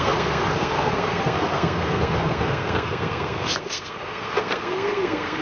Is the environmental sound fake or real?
fake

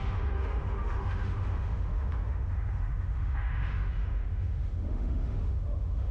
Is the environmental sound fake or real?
fake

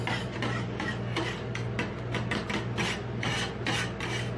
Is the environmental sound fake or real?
real